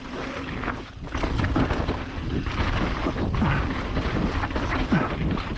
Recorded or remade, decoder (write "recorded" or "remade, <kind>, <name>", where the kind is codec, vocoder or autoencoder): recorded